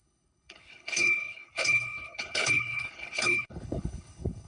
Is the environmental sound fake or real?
fake